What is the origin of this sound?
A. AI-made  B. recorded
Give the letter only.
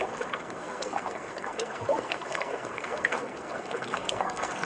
A